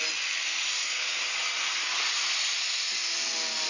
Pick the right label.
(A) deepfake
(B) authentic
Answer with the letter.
B